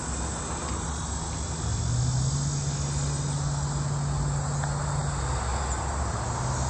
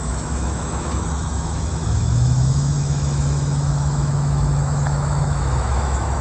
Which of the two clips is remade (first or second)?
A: second